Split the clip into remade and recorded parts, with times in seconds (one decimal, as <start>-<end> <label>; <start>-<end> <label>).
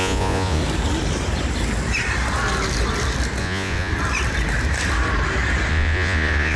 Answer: 0.0-0.6 remade; 0.6-3.4 recorded; 3.4-3.9 remade; 3.9-5.7 recorded; 5.7-6.6 remade